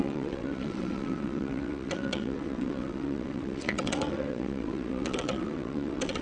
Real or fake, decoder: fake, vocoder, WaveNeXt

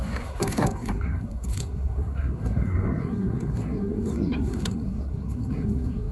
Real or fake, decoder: fake, codec, SNAC